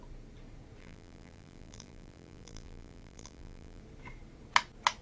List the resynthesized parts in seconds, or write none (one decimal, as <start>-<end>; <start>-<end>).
0.8-3.8